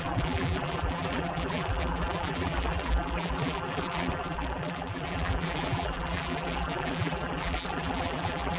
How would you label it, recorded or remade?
remade